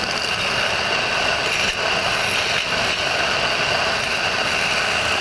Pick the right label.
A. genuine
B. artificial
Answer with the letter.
A